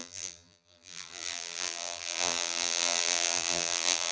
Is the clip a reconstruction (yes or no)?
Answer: yes